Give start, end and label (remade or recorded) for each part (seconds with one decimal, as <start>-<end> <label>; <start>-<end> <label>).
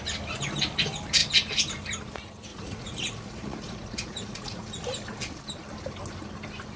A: 0.0-2.5 recorded; 2.5-4.7 remade; 4.7-6.8 recorded